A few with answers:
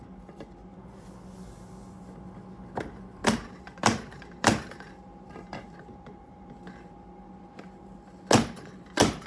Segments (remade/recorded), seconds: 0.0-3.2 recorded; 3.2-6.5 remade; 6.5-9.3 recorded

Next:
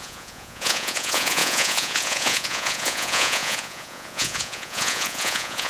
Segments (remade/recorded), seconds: 0.0-5.7 remade

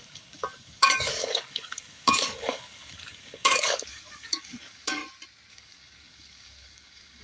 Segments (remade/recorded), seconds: 0.0-5.0 remade; 5.0-5.5 recorded; 5.5-7.2 remade

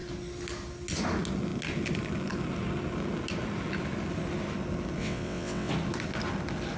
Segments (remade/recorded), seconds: 0.0-5.0 recorded; 5.0-5.7 remade; 5.7-6.8 recorded

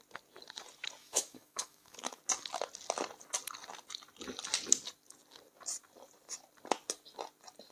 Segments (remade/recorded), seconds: 0.0-1.0 recorded; 1.0-2.2 remade; 2.2-7.7 recorded

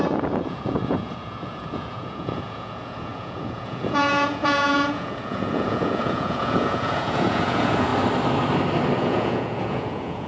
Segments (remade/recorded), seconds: 0.0-7.9 remade; 7.9-9.0 recorded; 9.0-10.3 remade